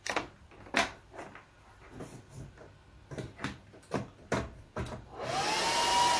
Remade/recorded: recorded